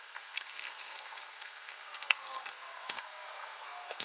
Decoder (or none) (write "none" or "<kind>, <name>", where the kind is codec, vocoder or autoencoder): codec, SNAC